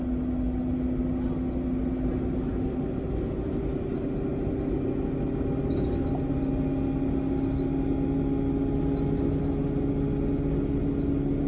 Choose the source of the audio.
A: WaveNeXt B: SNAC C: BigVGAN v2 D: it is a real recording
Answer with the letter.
D